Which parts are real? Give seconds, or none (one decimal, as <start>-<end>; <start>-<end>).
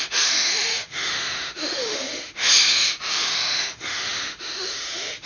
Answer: none